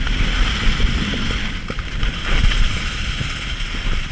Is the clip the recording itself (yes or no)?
yes